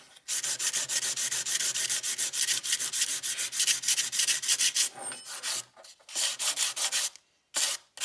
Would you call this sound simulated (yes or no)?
no